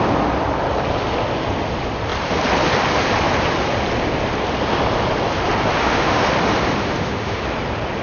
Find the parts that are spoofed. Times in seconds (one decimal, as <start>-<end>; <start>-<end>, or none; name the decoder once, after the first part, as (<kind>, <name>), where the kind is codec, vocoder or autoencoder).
5.8-6.3 (autoencoder, DAC-VAE); 6.8-7.4